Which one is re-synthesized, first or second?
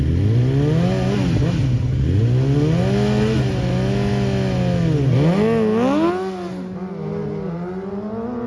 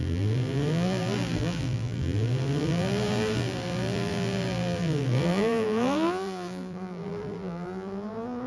second